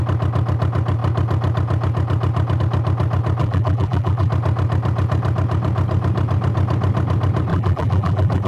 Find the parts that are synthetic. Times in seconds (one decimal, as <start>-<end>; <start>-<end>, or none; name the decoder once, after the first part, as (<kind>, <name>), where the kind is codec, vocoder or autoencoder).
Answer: 3.4-4.3 (vocoder, BigVGAN v2); 7.5-8.5